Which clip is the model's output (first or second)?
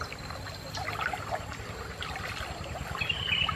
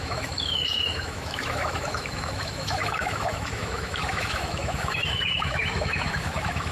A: second